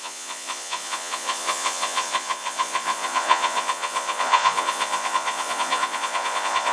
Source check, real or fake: fake